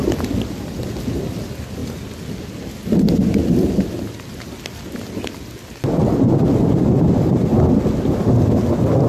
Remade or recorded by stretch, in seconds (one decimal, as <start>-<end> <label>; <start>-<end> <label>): 0.0-9.1 recorded